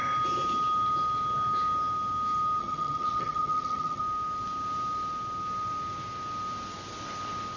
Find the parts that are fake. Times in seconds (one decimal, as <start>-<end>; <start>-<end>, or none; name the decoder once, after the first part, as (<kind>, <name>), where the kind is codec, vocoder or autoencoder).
2.6-4.0 (vocoder, HiFi-GAN)